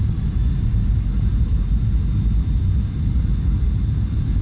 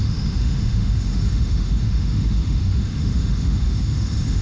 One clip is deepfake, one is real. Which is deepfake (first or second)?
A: second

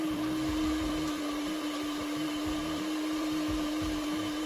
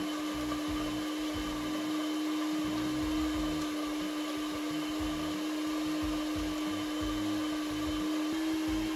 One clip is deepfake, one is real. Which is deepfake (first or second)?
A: first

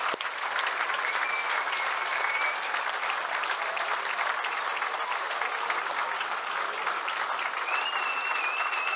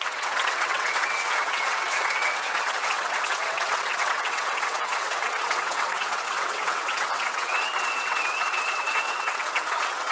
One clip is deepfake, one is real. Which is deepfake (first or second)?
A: second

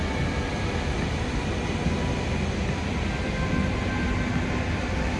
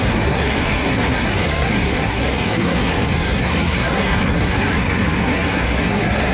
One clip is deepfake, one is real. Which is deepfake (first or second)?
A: second